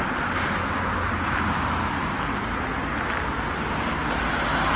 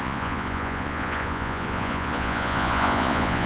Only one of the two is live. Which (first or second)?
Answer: first